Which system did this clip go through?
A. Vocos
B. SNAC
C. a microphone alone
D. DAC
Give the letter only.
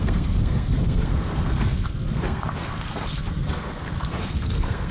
B